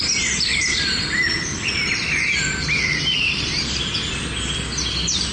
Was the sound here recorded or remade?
remade